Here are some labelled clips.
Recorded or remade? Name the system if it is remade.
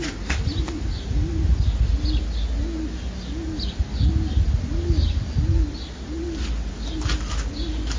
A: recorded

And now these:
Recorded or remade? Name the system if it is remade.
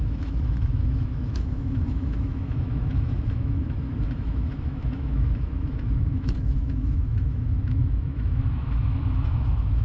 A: remade, autoencoder, DAC-VAE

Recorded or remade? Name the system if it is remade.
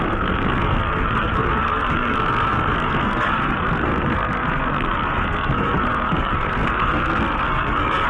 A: remade, codec, SNAC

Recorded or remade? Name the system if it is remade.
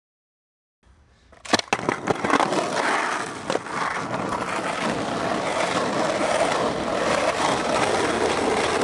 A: recorded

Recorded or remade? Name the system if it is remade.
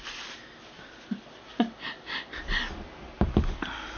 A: recorded